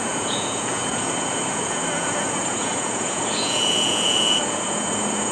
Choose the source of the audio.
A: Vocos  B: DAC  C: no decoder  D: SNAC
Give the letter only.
A